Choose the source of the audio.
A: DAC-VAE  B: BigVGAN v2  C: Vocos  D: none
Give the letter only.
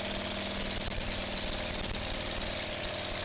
D